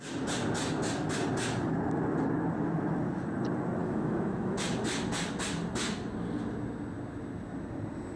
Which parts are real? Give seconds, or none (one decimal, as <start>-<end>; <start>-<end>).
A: 0.0-3.8; 4.6-8.2